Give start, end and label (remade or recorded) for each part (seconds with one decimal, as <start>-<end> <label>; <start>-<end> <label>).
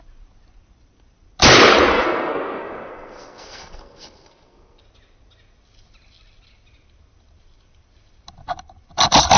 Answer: 0.0-1.9 recorded; 1.9-4.8 remade; 4.8-9.4 recorded